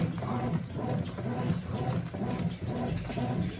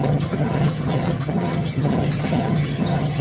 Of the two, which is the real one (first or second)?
first